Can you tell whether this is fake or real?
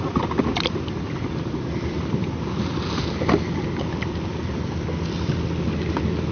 real